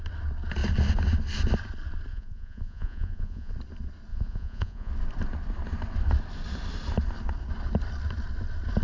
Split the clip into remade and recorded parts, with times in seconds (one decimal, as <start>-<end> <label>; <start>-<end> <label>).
0.0-2.1 recorded; 2.1-3.5 remade; 3.5-4.1 recorded; 4.1-4.9 remade; 4.9-8.8 recorded

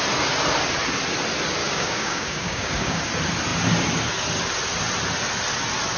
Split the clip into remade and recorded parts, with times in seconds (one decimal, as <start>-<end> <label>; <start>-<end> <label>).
0.0-1.6 recorded; 1.6-3.0 remade; 3.0-6.0 recorded

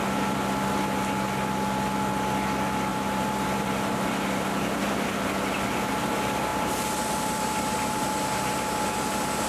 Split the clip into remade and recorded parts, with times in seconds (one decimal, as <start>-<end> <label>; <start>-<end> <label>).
0.0-2.9 recorded; 2.9-4.9 remade; 4.9-6.5 recorded; 6.5-8.8 remade; 8.8-9.5 recorded

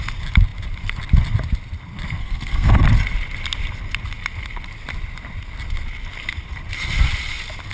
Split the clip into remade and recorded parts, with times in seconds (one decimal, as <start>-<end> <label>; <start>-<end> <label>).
0.0-2.2 recorded; 2.2-2.8 remade; 2.8-7.7 recorded

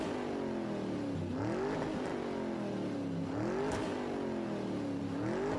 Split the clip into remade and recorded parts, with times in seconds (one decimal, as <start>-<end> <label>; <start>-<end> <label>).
0.0-5.6 recorded

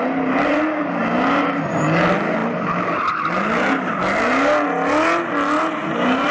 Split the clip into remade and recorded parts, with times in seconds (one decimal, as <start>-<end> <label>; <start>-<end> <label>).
0.0-6.3 recorded

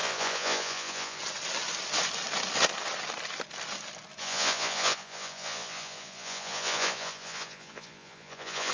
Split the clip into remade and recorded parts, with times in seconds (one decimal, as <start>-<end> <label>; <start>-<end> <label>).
0.0-1.2 remade; 1.2-4.2 recorded; 4.2-8.7 remade

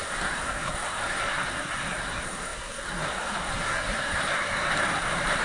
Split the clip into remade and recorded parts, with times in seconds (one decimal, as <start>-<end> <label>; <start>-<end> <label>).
0.0-4.7 remade; 4.7-5.4 recorded